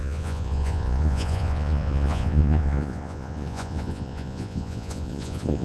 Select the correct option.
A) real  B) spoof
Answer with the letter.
B